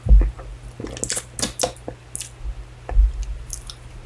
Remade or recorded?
recorded